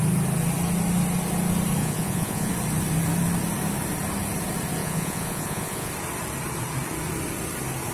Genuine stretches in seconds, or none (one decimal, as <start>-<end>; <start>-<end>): 0.0-1.8; 2.5-4.8; 5.9-7.9